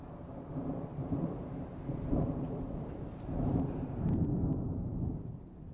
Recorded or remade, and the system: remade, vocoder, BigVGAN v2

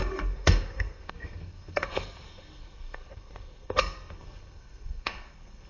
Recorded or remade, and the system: remade, codec, SNAC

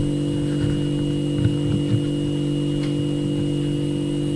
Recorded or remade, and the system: recorded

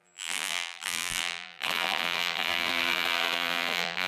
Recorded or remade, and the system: remade, vocoder, BigVGAN v2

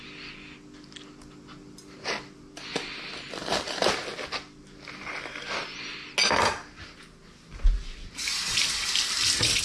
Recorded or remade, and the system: recorded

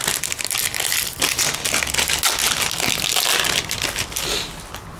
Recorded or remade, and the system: recorded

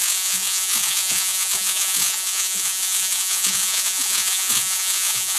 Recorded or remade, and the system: remade, vocoder, Vocos